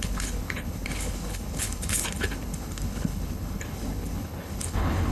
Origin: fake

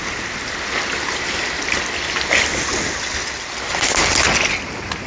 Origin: real